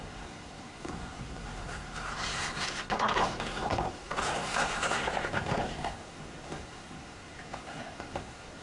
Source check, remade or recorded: remade